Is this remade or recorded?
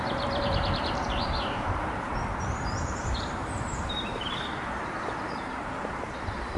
remade